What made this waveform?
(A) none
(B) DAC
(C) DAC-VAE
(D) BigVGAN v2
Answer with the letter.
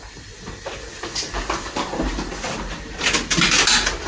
A